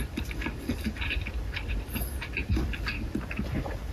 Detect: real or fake fake